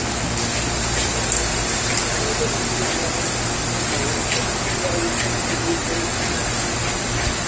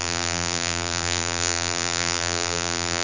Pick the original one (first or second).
first